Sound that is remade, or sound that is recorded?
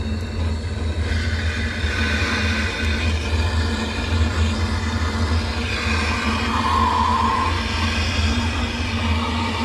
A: recorded